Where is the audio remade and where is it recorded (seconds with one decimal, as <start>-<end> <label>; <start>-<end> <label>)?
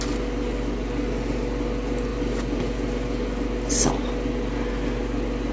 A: 0.0-5.5 recorded